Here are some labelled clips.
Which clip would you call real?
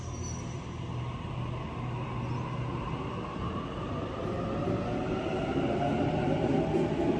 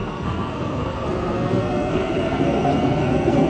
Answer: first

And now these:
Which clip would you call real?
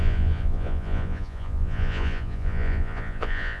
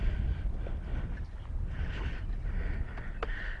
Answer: second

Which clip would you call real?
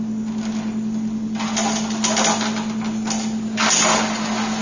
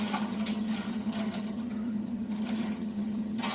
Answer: first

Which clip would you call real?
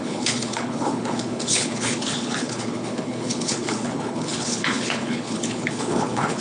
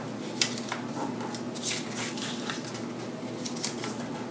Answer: second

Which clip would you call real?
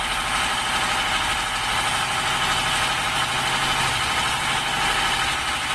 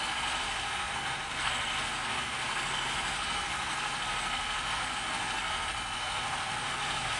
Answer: first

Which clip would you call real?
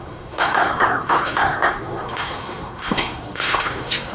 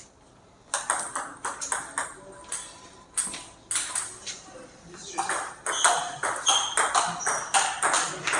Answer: second